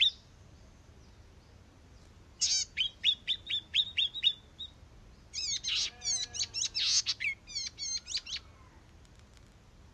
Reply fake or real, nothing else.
real